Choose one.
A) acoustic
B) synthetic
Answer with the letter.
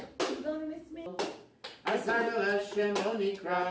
A